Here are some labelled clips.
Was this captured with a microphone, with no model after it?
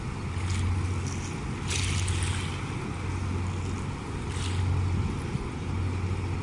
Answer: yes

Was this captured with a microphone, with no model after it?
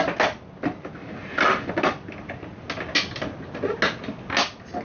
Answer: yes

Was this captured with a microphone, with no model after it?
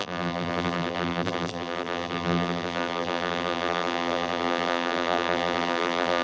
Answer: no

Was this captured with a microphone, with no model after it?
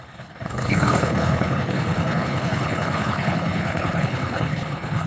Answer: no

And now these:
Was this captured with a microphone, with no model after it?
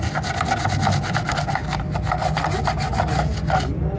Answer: yes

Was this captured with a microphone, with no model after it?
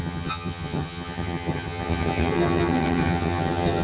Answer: no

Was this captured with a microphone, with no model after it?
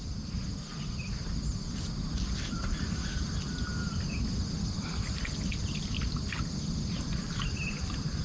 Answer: yes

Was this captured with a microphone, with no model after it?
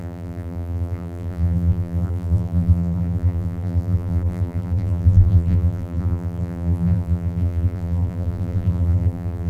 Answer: no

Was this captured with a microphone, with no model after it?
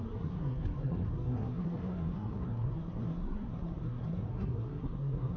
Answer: no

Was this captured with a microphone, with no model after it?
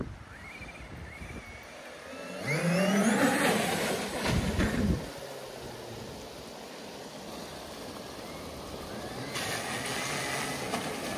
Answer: yes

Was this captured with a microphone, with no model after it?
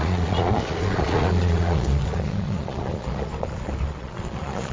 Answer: no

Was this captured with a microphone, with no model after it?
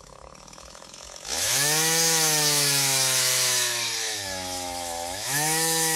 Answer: no